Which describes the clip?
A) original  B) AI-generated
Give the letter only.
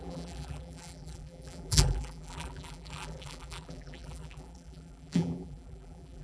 B